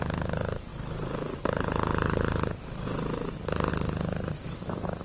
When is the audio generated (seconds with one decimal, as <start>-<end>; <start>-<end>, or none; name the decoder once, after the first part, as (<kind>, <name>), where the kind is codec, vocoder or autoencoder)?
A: none